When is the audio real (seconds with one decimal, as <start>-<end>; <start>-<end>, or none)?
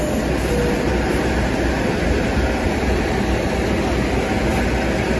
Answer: 0.0-5.2